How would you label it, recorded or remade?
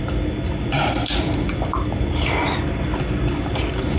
remade